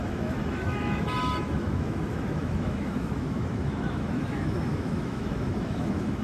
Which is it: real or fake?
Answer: fake